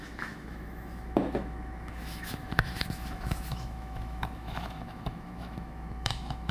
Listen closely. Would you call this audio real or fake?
fake